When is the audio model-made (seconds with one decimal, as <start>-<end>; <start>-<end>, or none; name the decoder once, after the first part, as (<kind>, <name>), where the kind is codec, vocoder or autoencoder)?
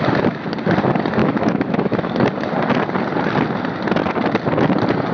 1.2-2.1 (autoencoder, DAC-VAE)